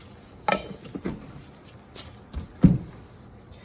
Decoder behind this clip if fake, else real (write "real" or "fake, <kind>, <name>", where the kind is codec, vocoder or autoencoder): real